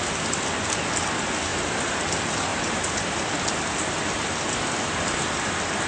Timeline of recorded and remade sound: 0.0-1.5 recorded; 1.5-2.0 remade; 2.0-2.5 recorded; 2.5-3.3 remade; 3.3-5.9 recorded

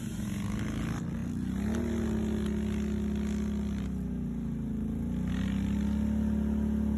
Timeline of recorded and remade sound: 0.0-7.0 recorded

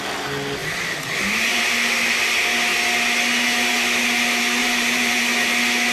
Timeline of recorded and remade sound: 0.0-0.6 recorded; 0.6-2.1 remade; 2.1-4.6 recorded; 4.6-5.2 remade; 5.2-5.9 recorded